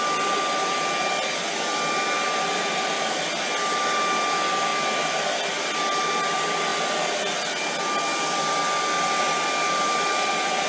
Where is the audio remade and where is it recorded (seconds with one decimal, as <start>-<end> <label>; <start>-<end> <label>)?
0.0-10.7 recorded